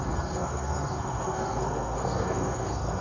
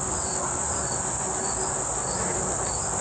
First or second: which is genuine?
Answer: second